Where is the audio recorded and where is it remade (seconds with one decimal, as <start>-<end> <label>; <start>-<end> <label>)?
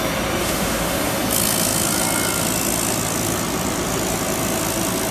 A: 0.0-0.4 recorded; 0.4-1.1 remade; 1.1-5.1 recorded